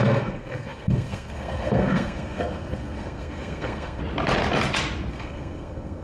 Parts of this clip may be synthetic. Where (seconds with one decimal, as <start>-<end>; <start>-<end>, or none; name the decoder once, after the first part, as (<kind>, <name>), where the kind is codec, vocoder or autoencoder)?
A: 0.0-4.0 (codec, SNAC); 5.1-6.0